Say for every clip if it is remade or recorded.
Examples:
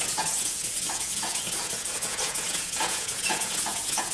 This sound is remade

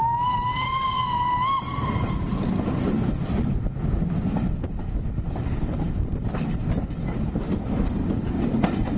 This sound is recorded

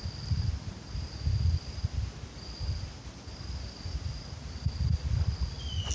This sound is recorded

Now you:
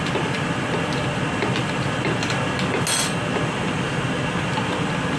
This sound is recorded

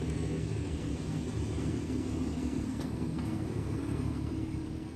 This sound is remade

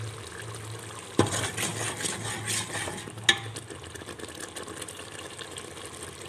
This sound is recorded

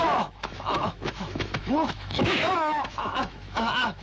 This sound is remade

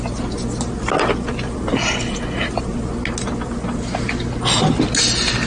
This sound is recorded